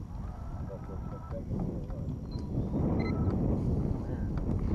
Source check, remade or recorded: recorded